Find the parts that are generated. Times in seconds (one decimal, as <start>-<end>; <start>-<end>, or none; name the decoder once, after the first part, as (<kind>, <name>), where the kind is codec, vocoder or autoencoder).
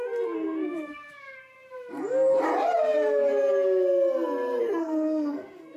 0.0-1.1 (codec, SNAC); 4.6-5.8